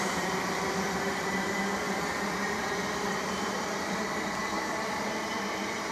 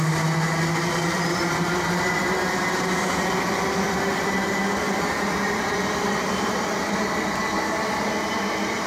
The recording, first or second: second